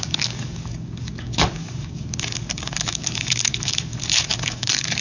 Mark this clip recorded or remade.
remade